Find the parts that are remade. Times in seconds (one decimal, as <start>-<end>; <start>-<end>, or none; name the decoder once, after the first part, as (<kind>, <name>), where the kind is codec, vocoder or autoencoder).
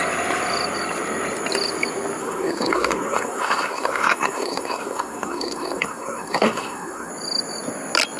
2.2-7.1 (codec, SNAC)